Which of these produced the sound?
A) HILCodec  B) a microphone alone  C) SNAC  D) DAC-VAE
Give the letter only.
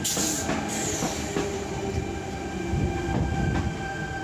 B